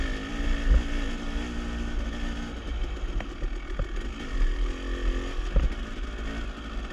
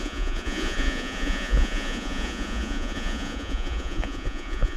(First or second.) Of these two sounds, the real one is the first